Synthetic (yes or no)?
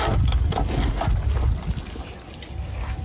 no